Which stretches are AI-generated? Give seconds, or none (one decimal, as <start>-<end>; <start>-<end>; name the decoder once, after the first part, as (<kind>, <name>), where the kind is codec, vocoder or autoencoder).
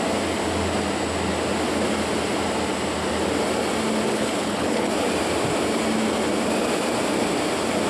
4.1-4.9 (codec, HILCodec)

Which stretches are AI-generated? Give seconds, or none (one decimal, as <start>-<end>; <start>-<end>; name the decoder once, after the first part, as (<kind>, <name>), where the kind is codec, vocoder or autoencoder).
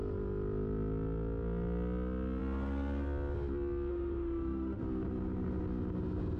3.9-4.8 (autoencoder, DAC-VAE)